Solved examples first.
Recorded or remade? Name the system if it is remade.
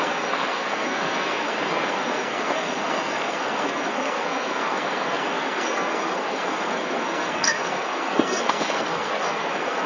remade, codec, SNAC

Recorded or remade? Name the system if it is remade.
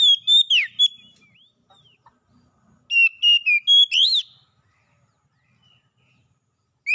recorded